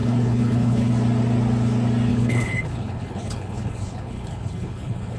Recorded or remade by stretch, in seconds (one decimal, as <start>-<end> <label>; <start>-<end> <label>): 0.0-0.9 remade; 0.9-2.1 recorded; 2.1-5.2 remade